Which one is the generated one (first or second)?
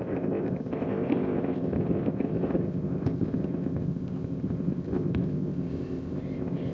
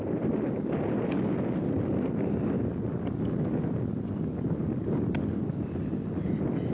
first